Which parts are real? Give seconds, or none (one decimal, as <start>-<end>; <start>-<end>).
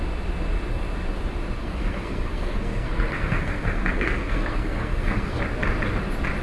0.0-1.6; 5.4-6.4